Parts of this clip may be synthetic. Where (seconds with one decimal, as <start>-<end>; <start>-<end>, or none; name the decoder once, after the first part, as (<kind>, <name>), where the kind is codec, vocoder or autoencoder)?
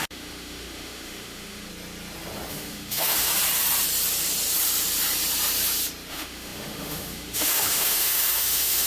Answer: 0.0-1.7 (autoencoder, DAC-VAE); 2.5-3.3; 6.1-8.9